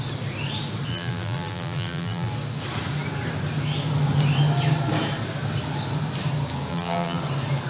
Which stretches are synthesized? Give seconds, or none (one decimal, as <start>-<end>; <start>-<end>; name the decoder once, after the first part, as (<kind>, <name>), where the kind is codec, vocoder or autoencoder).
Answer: 0.9-2.3 (vocoder, BigVGAN v2); 6.7-7.2